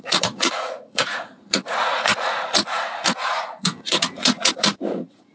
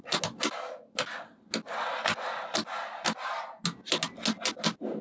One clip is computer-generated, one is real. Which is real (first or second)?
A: second